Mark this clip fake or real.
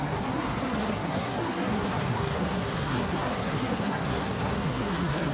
fake